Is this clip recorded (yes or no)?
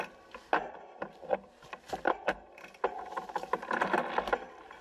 yes